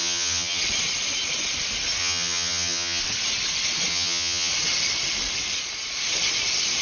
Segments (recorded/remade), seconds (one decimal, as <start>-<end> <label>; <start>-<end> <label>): 0.0-0.6 remade; 0.6-2.0 recorded; 2.0-3.0 remade; 3.0-3.9 recorded; 3.9-4.5 remade; 4.5-6.8 recorded